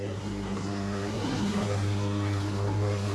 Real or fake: fake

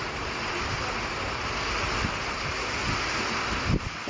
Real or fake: real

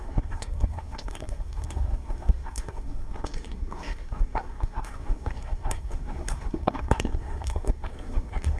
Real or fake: fake